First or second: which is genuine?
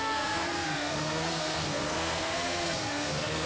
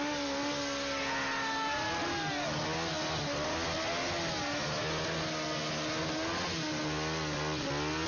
second